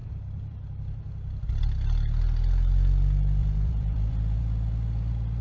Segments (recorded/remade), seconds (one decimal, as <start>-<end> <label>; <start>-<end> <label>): 0.0-1.6 remade; 1.6-3.4 recorded; 3.4-4.4 remade; 4.4-5.4 recorded